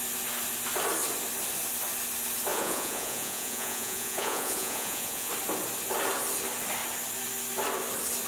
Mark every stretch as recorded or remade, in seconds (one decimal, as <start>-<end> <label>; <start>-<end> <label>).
0.0-2.5 recorded; 2.5-5.3 remade; 5.3-8.3 recorded